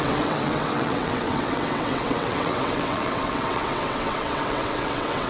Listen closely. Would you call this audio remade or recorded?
remade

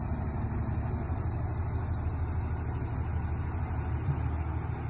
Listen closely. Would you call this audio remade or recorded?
recorded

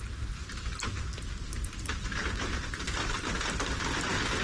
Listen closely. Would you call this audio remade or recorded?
recorded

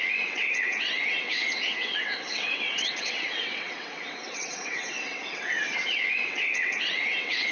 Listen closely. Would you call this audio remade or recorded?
remade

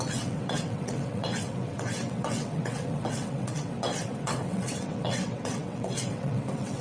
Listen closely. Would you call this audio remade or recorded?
remade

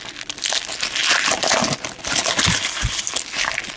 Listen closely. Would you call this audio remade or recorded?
recorded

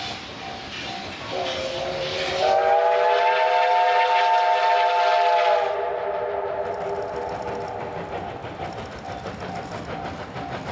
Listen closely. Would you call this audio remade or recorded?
recorded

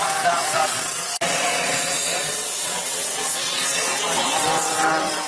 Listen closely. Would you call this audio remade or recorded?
remade